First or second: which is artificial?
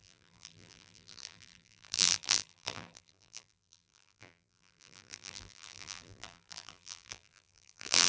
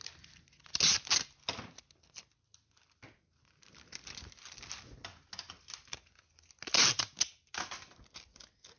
first